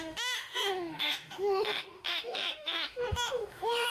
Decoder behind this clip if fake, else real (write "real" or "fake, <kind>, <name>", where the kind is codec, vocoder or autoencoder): fake, autoencoder, DAC-VAE